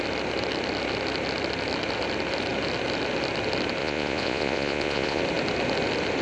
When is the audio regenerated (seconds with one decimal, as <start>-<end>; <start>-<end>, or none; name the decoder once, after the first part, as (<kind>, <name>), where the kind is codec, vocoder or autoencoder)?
3.8-5.2 (vocoder, Vocos)